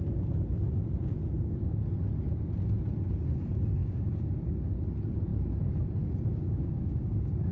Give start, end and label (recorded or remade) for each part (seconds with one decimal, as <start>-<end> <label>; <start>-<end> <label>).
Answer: 0.0-3.8 recorded; 3.8-4.3 remade; 4.3-6.3 recorded; 6.3-7.5 remade